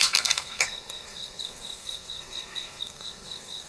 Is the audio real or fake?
fake